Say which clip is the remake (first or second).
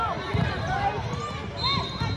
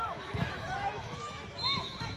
second